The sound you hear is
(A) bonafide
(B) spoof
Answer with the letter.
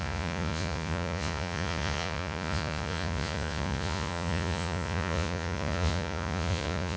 B